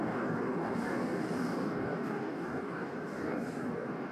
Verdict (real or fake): fake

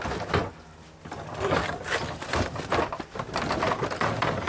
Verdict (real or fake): real